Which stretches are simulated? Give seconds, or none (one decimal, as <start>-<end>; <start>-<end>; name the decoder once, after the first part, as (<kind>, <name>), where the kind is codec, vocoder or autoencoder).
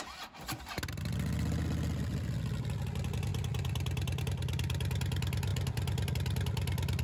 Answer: none